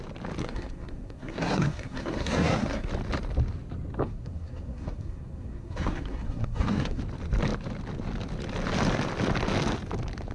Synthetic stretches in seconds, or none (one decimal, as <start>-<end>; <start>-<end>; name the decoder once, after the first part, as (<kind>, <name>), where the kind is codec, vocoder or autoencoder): 0.4-2.9 (codec, SNAC); 4.0-7.0